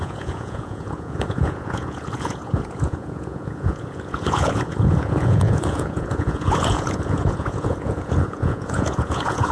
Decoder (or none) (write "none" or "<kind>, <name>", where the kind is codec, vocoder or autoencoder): vocoder, Vocos